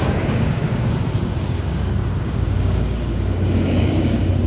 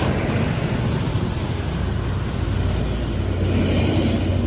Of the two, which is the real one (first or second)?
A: second